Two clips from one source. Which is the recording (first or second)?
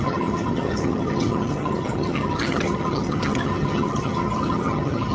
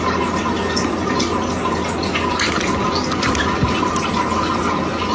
second